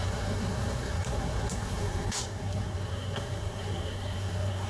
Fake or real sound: fake